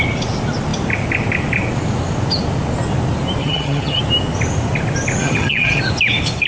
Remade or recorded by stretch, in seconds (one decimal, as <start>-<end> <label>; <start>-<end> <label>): 0.0-3.4 recorded; 3.4-4.0 remade; 4.0-5.2 recorded; 5.2-5.8 remade; 5.8-6.5 recorded